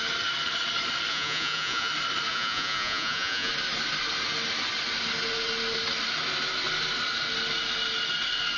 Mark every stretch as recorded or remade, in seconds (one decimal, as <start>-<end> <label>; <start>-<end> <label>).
0.0-1.1 recorded; 1.1-1.9 remade; 1.9-2.3 recorded; 2.3-3.5 remade; 3.5-8.6 recorded